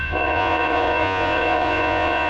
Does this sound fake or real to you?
fake